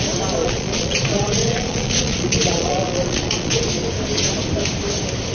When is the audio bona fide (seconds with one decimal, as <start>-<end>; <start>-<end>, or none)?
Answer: 0.0-0.4; 3.6-5.3